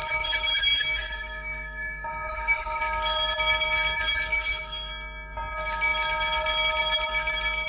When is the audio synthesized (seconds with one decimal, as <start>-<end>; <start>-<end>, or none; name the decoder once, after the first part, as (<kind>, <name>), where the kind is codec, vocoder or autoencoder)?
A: 0.0-2.8 (autoencoder, DAC-VAE); 4.3-4.9